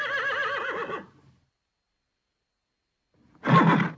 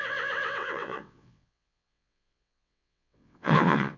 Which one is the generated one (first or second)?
second